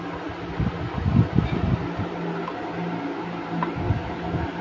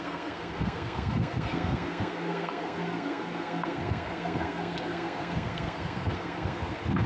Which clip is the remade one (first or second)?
second